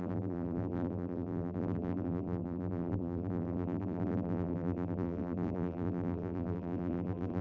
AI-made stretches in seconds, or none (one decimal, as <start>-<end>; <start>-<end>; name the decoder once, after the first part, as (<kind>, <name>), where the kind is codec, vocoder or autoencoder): 0.0-7.4 (vocoder, BigVGAN v2)